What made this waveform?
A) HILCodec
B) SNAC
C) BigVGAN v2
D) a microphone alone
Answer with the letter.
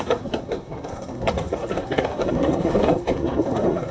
B